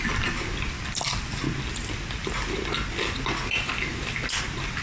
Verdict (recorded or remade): recorded